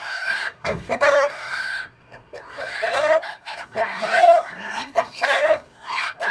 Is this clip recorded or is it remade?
remade